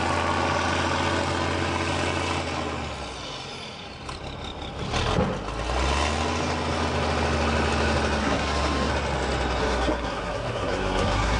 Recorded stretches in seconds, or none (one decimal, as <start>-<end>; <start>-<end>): 0.0-8.2; 8.9-9.6